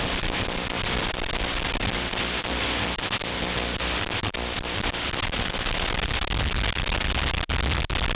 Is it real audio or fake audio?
real